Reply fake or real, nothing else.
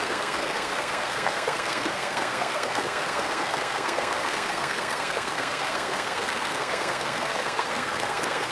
fake